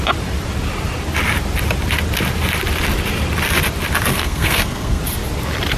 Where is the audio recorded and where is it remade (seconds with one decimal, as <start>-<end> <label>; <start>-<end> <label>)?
0.0-4.1 recorded; 4.1-5.0 remade; 5.0-5.8 recorded